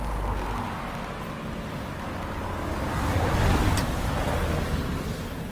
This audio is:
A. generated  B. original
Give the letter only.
B